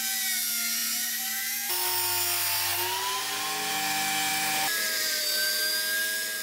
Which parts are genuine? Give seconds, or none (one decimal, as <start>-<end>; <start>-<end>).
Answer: 0.0-0.8; 1.7-4.3; 5.2-6.4